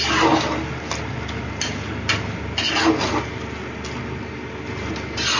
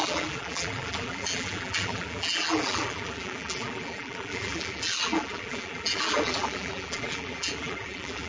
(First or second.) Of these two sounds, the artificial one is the second